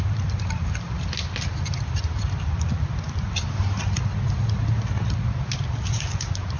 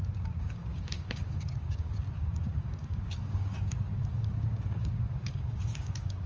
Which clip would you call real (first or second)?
first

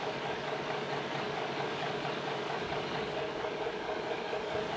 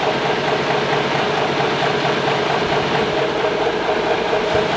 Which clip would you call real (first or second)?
second